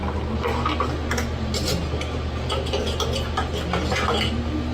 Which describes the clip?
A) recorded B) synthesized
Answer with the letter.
A